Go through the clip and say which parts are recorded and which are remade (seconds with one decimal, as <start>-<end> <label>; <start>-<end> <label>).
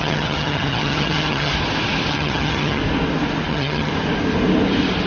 0.0-1.5 remade; 1.5-2.1 recorded; 2.1-2.8 remade; 2.8-3.5 recorded; 3.5-3.9 remade; 3.9-5.1 recorded